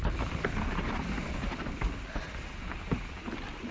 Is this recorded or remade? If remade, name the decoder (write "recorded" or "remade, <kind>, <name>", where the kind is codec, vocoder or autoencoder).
recorded